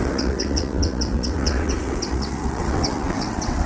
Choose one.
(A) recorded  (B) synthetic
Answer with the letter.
B